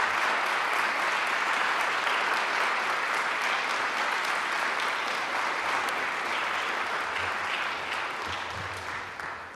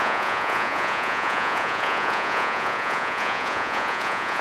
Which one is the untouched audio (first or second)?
first